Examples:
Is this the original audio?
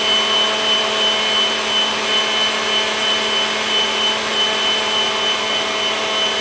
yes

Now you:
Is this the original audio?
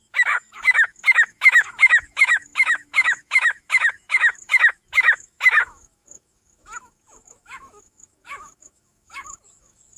no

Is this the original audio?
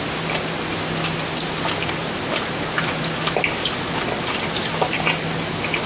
yes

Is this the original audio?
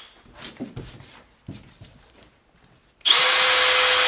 yes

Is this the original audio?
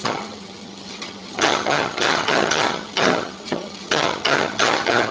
no